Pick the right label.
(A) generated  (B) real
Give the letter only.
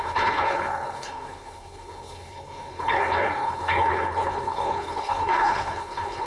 A